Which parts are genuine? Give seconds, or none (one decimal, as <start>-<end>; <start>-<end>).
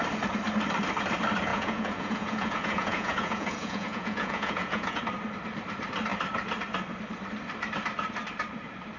0.0-1.5; 5.0-9.0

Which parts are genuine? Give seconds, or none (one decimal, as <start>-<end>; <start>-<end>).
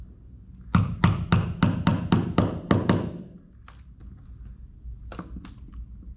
0.0-6.2